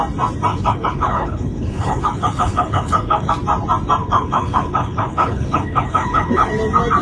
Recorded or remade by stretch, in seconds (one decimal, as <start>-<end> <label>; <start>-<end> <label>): 0.0-0.5 recorded; 0.5-3.3 remade; 3.3-4.0 recorded; 4.0-6.5 remade; 6.5-7.0 recorded